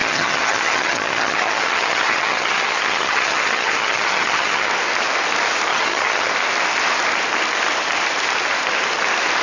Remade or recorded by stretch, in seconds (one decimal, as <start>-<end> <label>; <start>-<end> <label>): 0.0-4.7 remade; 4.7-5.7 recorded; 5.7-6.3 remade; 6.3-9.4 recorded